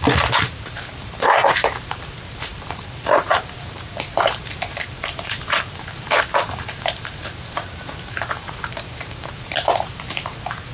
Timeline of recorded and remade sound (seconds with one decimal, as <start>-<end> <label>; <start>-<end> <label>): 0.0-10.7 remade